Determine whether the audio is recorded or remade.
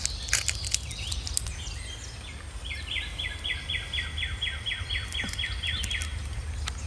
recorded